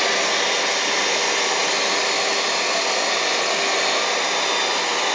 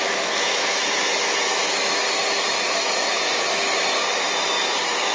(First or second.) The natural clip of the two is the first